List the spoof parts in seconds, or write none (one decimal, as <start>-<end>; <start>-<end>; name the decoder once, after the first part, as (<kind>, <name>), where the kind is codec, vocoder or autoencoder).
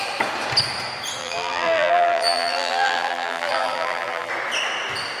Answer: 1.2-4.3 (vocoder, BigVGAN v2)